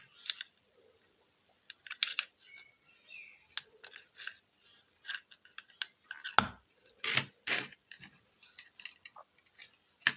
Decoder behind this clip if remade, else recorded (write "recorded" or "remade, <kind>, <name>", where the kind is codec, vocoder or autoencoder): recorded